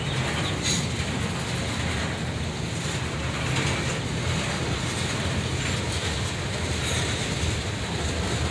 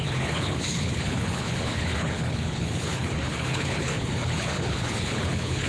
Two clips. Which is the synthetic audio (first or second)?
second